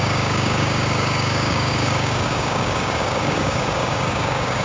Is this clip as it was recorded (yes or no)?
no